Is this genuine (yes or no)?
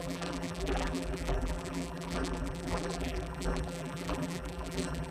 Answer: no